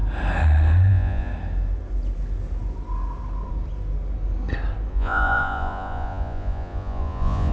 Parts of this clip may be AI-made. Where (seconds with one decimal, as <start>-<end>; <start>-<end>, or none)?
0.9-1.3; 4.9-7.5